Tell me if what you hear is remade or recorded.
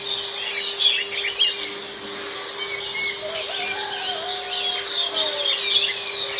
recorded